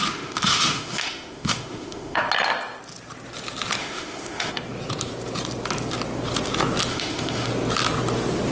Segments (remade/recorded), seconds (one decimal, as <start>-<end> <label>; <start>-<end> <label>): 0.0-2.2 remade; 2.2-3.8 recorded; 3.8-4.5 remade; 4.5-6.9 recorded; 6.9-7.5 remade; 7.5-8.5 recorded